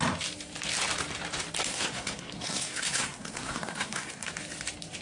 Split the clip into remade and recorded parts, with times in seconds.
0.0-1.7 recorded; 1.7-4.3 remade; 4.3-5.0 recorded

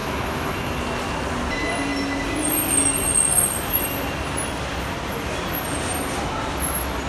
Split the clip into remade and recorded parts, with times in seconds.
0.0-0.8 remade; 0.8-7.1 recorded

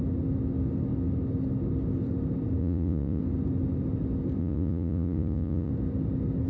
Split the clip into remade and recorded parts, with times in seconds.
0.0-2.6 recorded; 2.6-3.2 remade; 3.2-4.4 recorded; 4.4-5.7 remade; 5.7-6.5 recorded

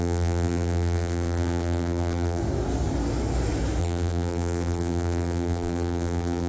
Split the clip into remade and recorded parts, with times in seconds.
0.0-2.4 remade; 2.4-3.8 recorded; 3.8-6.5 remade

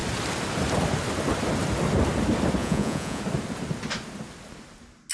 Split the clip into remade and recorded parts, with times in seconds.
0.0-2.6 recorded; 2.6-3.2 remade; 3.2-5.1 recorded

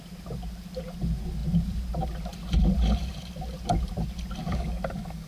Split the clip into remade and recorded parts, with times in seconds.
0.0-4.4 recorded; 4.4-5.3 remade

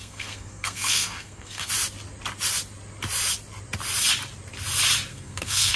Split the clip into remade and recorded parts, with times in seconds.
0.0-1.7 remade; 1.7-5.1 recorded; 5.1-5.8 remade